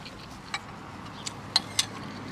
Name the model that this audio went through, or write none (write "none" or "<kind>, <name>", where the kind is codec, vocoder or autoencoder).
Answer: none